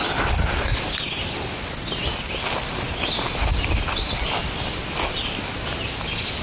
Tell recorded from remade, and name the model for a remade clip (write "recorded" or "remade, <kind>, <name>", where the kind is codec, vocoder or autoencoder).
recorded